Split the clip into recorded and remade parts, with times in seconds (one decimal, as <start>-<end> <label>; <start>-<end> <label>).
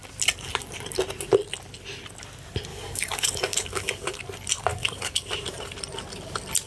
0.0-2.7 recorded; 2.7-4.2 remade; 4.2-4.7 recorded; 4.7-5.3 remade; 5.3-6.7 recorded